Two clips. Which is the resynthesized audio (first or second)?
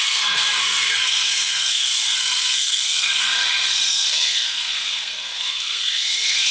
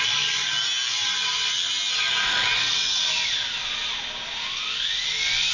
first